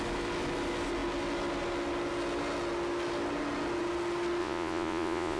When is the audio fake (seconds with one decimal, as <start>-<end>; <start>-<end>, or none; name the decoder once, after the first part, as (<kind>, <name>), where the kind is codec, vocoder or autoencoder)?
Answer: 4.4-5.4 (vocoder, Vocos)